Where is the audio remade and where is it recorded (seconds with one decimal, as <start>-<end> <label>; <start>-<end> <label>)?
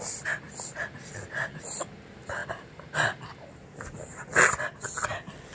0.0-5.5 recorded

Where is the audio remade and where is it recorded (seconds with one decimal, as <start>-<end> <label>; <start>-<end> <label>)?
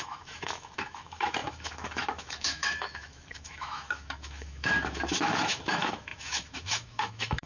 0.0-7.5 remade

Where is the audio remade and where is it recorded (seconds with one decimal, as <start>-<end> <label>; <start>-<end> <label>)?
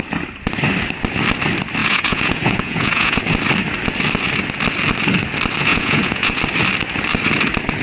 0.0-1.8 recorded; 1.8-3.2 remade; 3.2-5.7 recorded; 5.7-6.4 remade; 6.4-7.8 recorded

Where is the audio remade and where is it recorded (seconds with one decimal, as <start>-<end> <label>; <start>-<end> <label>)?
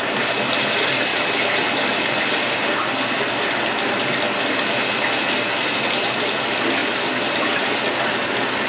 0.0-1.1 recorded; 1.1-2.7 remade; 2.7-6.8 recorded; 6.8-7.8 remade; 7.8-8.7 recorded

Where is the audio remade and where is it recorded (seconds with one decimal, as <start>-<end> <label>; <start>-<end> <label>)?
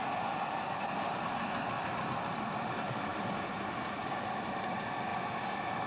0.0-5.9 recorded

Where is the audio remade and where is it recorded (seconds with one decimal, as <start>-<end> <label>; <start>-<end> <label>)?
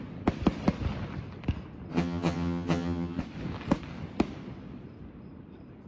0.0-1.9 recorded; 1.9-3.2 remade; 3.2-5.9 recorded